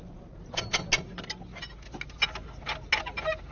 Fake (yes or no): no